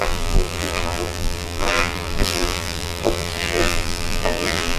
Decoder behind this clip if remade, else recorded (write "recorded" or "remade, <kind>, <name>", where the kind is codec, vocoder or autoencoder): remade, vocoder, BigVGAN v2